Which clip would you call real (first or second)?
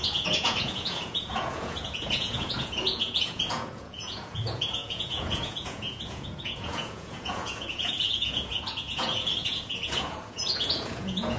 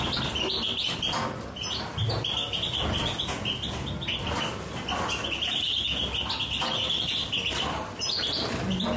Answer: second